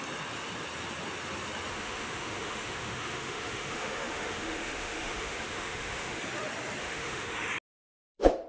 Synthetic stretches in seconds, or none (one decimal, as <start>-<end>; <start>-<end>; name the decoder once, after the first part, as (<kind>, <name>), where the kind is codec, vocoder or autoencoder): 1.7-6.2 (autoencoder, DAC-VAE); 6.8-7.5